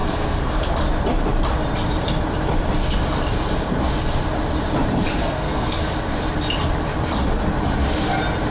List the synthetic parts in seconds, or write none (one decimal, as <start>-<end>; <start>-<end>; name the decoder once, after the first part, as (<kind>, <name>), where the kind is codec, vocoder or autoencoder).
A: 0.0-0.7 (codec, SNAC); 5.1-5.9